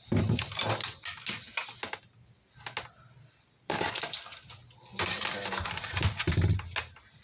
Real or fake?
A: real